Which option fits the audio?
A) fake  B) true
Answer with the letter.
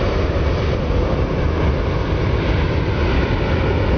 B